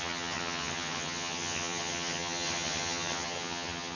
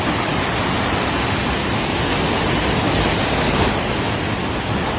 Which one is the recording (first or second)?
second